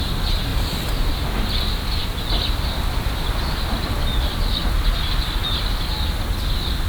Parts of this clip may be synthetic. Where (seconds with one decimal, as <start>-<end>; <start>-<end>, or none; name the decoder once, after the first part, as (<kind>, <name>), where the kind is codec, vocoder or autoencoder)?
none